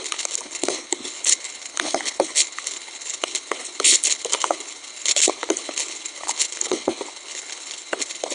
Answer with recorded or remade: remade